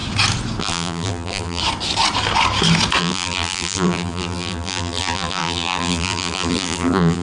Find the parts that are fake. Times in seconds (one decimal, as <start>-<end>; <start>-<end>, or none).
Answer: 0.6-1.6; 3.0-7.2